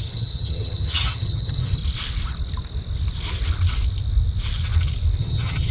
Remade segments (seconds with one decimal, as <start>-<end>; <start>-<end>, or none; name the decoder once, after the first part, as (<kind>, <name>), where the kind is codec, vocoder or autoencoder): 0.0-1.8 (vocoder, HiFi-GAN); 5.2-5.7

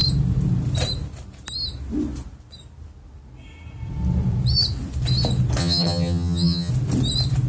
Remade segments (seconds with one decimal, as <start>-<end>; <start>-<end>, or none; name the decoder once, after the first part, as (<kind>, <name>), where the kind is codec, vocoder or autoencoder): 5.6-6.7 (vocoder, HiFi-GAN)